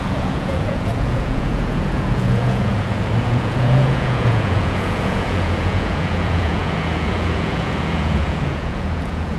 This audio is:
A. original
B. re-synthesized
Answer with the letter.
B